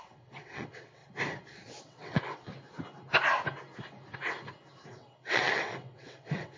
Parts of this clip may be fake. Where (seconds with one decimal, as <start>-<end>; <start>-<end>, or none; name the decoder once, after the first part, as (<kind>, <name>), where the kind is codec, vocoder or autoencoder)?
0.0-1.0 (vocoder, WaveNeXt); 1.8-2.5; 4.9-6.6